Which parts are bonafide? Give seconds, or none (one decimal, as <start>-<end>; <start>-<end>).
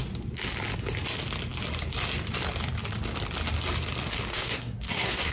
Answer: 0.0-4.3